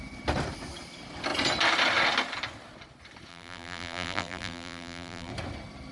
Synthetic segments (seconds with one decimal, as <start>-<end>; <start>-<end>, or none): 3.3-5.3